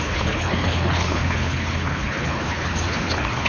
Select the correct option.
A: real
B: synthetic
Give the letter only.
B